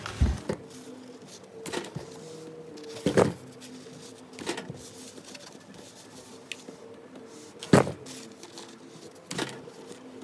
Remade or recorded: recorded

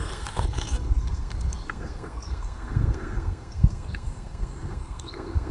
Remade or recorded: remade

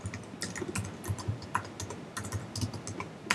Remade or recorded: recorded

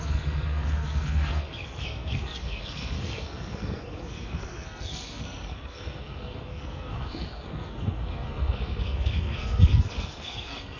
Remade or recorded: remade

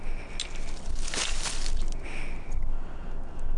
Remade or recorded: recorded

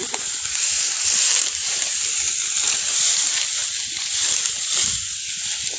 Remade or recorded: recorded